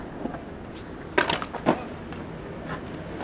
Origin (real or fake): real